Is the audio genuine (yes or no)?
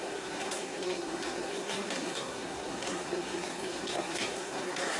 no